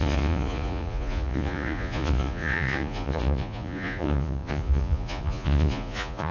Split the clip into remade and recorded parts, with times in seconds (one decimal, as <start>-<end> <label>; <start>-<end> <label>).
0.0-6.3 remade